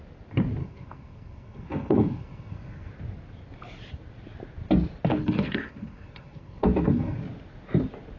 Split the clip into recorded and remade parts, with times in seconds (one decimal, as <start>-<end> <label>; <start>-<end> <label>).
0.0-0.6 recorded; 0.6-2.9 remade; 2.9-5.1 recorded; 5.1-7.2 remade; 7.2-8.2 recorded